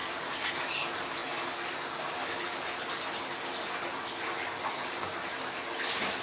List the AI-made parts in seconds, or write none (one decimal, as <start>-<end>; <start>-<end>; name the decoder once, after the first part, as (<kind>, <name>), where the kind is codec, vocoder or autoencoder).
none